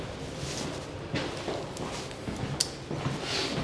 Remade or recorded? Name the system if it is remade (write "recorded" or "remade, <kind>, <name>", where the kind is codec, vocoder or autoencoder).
recorded